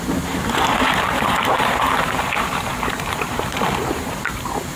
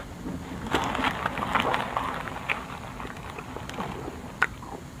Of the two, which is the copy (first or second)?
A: first